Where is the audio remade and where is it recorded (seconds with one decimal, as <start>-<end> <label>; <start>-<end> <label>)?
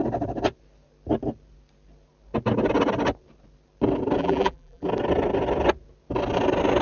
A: 0.0-4.2 recorded; 4.2-4.9 remade; 4.9-6.8 recorded